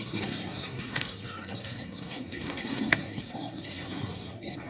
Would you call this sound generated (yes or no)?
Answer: yes